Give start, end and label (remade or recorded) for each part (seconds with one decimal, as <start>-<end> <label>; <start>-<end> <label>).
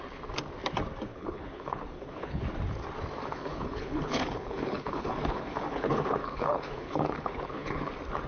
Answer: 0.0-1.1 recorded; 1.1-2.4 remade; 2.4-3.2 recorded; 3.2-7.9 remade; 7.9-8.3 recorded